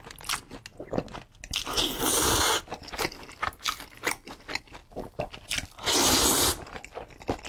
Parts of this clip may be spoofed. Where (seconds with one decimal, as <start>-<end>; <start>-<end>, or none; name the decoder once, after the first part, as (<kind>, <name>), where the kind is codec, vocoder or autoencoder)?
4.8-6.0 (vocoder, BigVGAN v2)